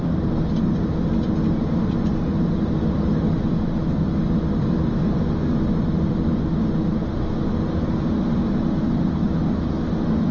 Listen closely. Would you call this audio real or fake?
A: real